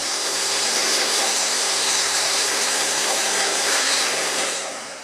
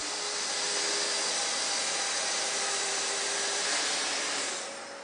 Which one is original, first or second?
second